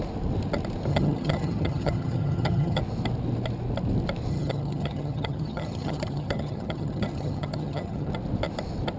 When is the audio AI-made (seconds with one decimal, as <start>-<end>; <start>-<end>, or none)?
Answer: 0.9-2.8; 4.3-8.1

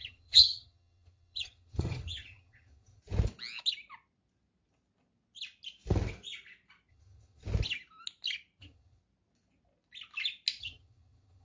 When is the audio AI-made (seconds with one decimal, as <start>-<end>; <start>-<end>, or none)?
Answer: 0.0-3.0; 6.9-7.4; 8.6-9.0; 10.6-11.4

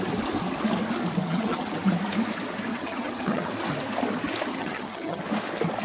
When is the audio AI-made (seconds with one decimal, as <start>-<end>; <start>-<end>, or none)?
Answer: 1.2-1.7; 2.7-3.5; 4.5-5.2

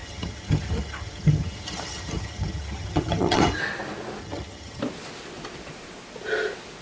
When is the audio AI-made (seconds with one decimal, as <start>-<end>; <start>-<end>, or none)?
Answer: 0.0-3.6; 4.2-4.8